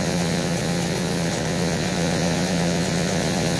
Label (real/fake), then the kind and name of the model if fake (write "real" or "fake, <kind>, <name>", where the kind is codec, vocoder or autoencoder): fake, vocoder, Vocos